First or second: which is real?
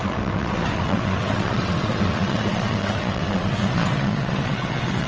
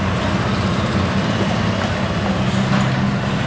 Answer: second